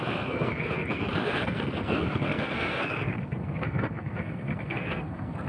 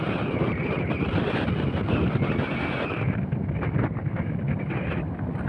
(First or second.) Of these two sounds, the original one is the second